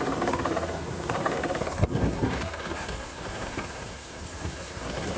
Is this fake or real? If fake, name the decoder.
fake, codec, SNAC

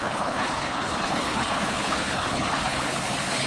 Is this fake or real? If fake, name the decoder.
fake, codec, HILCodec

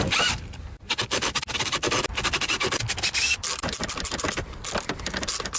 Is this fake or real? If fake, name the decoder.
real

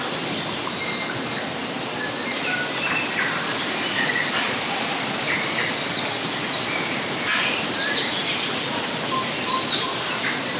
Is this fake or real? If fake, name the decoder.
real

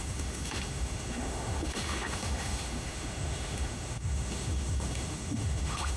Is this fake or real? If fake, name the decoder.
fake, autoencoder, DAC-VAE